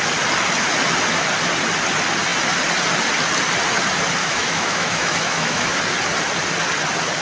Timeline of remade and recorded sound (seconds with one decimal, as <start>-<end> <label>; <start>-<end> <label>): 0.0-4.2 recorded; 4.2-5.8 remade; 5.8-7.2 recorded